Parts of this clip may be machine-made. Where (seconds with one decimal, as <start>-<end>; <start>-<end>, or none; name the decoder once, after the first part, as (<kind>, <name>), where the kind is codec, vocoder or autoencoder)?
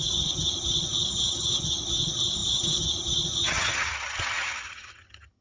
0.0-5.4 (vocoder, HiFi-GAN)